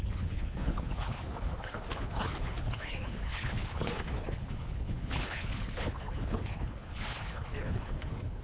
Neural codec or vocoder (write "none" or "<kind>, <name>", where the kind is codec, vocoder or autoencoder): codec, HILCodec